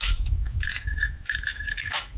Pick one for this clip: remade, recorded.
remade